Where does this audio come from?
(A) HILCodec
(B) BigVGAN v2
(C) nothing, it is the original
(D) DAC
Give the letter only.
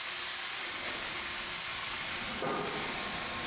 C